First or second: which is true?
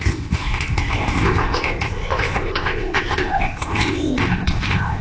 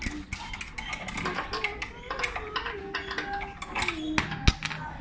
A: second